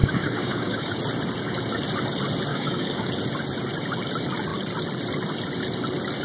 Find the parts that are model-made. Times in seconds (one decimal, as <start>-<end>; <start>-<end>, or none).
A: 0.0-1.0; 2.5-3.1